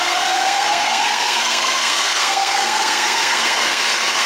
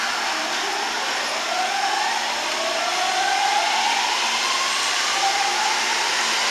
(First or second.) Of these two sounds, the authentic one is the second